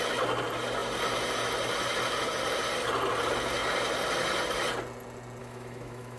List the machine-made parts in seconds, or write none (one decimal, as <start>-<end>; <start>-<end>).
5.4-6.2